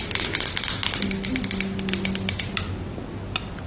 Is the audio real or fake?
real